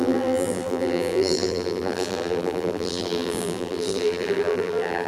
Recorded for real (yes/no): no